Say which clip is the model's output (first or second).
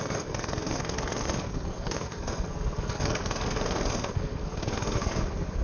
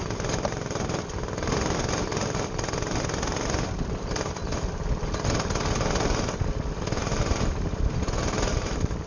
first